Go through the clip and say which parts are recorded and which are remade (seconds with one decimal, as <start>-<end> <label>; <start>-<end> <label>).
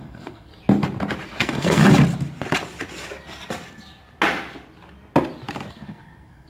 0.0-0.5 remade; 0.5-1.4 recorded; 1.4-1.8 remade; 1.8-5.7 recorded; 5.7-6.5 remade